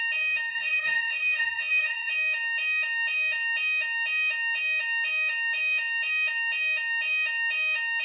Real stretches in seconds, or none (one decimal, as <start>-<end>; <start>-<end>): 0.0-0.5; 2.1-8.0